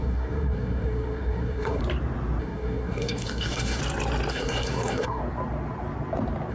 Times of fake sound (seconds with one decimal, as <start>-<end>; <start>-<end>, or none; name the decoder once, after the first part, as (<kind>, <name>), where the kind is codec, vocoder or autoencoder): 0.0-1.8 (codec, SNAC); 2.4-3.8; 4.3-5.2